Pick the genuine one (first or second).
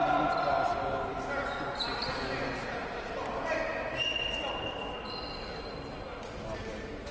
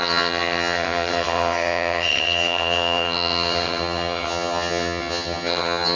first